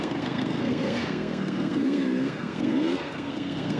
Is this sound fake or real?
fake